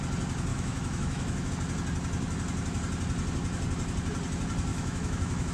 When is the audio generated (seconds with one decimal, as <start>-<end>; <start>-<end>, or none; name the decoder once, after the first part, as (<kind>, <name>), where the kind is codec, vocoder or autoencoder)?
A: 0.5-1.5 (autoencoder, DAC-VAE); 4.7-5.5